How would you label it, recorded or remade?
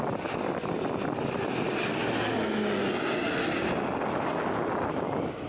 recorded